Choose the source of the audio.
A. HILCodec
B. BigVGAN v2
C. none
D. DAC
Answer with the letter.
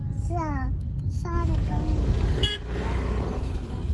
D